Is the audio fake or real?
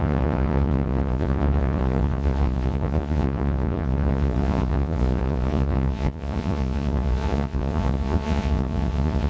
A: fake